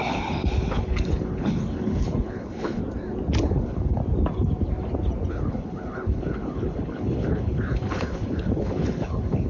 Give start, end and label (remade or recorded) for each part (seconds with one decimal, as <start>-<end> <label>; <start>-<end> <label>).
0.0-2.8 remade; 2.8-3.4 recorded; 3.4-4.0 remade; 4.0-5.3 recorded; 5.3-9.5 remade